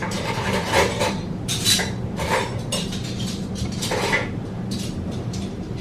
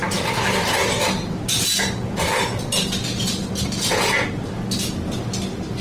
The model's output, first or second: first